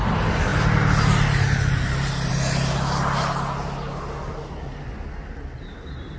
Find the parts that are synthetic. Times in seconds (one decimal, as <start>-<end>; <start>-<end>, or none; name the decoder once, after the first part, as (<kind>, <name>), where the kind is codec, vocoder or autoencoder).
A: none

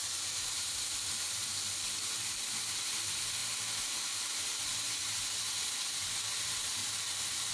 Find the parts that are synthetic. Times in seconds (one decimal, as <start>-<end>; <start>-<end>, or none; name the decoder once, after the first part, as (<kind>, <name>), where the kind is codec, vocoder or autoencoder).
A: 0.0-2.4 (vocoder, BigVGAN v2); 3.4-4.6; 6.8-7.5

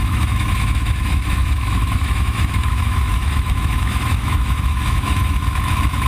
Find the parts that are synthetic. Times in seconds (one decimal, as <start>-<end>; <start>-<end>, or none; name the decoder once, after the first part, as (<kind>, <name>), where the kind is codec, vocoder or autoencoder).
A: 0.0-6.1 (autoencoder, DAC-VAE)

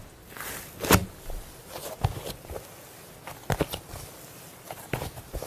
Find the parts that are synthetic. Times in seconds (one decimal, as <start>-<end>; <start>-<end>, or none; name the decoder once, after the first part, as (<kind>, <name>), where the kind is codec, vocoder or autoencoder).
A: none

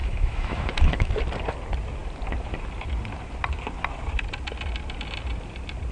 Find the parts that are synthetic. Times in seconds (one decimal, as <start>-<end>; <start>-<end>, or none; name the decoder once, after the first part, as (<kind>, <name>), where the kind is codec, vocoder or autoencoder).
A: 0.0-1.1 (autoencoder, DAC-VAE)

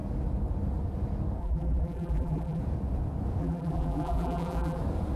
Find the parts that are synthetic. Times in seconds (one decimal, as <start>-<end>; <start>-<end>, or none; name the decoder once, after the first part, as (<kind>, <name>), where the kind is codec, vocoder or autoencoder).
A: 1.4-2.6 (vocoder, BigVGAN v2); 3.4-4.8